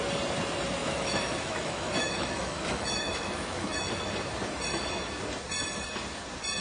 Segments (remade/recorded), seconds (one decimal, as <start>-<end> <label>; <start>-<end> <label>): 0.0-0.8 recorded; 0.8-3.9 remade; 3.9-6.6 recorded